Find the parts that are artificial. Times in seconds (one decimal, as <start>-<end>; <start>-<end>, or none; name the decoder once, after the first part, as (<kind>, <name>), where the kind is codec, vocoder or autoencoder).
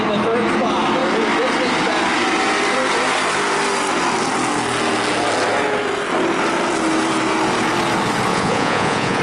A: 8.3-9.2 (vocoder, Vocos)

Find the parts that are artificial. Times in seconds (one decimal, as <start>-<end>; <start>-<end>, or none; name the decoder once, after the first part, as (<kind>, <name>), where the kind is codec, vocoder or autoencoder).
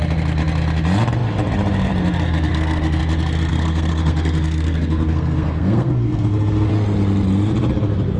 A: 2.5-3.0 (codec, SNAC); 3.5-6.7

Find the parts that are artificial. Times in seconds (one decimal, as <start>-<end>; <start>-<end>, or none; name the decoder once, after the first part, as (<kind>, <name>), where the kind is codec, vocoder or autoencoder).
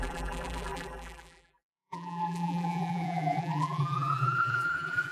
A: 0.0-5.1 (vocoder, BigVGAN v2)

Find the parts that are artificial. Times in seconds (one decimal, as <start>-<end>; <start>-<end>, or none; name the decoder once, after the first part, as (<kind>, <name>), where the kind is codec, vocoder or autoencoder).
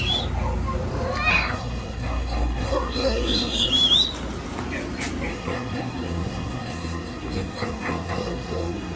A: 1.3-3.7 (codec, SNAC); 5.3-9.0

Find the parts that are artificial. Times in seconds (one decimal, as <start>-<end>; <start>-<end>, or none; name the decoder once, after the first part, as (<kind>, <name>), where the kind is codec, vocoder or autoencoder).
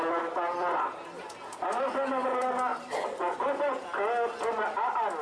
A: 2.7-3.6 (vocoder, BigVGAN v2)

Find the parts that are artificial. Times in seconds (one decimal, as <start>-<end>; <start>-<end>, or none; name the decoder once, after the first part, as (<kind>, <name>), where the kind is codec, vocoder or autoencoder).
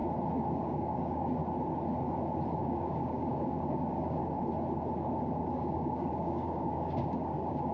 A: 0.5-1.4 (codec, DAC); 2.6-4.2; 5.5-7.7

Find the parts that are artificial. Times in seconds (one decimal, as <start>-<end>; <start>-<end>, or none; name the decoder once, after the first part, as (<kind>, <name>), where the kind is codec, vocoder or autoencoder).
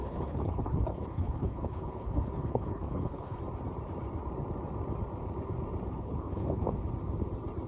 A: 0.0-3.4 (codec, HILCodec); 5.9-6.7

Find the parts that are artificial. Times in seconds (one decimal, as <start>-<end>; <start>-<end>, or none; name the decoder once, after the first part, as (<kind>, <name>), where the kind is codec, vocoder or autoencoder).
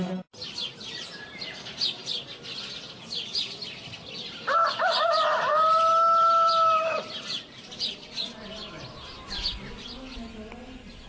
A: 1.1-2.0 (vocoder, BigVGAN v2); 5.5-8.2